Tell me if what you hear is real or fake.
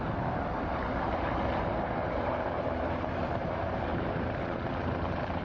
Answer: fake